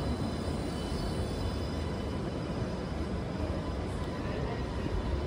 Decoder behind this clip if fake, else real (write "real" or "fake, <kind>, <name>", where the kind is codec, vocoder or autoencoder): real